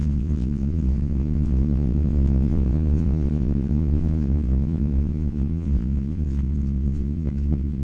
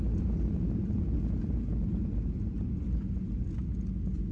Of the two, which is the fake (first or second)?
first